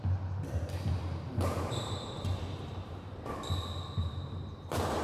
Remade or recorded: remade